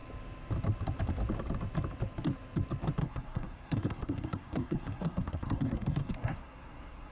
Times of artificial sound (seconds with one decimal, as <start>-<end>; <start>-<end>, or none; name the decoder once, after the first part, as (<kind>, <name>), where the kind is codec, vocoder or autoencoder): 3.0-7.1 (codec, SNAC)